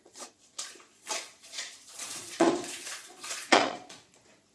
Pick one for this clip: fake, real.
fake